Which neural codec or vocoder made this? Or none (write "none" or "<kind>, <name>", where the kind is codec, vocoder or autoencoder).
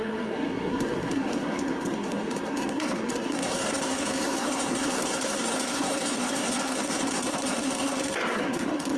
codec, SNAC